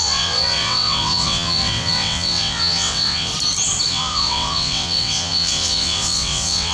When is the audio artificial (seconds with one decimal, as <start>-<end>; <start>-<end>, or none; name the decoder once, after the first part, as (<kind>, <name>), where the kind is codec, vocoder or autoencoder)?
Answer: 0.0-3.3 (vocoder, WaveNeXt); 3.9-6.7